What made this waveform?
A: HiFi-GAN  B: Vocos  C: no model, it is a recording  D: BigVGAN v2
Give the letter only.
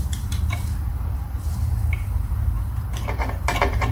D